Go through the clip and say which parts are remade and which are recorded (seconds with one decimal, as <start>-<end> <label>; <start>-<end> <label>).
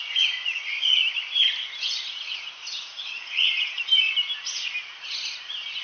0.0-1.0 remade; 1.0-2.1 recorded; 2.1-3.8 remade; 3.8-5.8 recorded